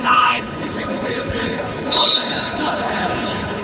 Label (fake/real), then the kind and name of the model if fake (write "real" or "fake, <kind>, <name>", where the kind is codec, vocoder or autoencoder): fake, codec, HILCodec